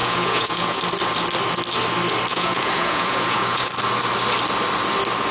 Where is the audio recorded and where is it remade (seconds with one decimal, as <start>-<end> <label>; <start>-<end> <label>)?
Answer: 0.0-0.8 remade; 0.8-2.3 recorded; 2.3-3.7 remade; 3.7-5.3 recorded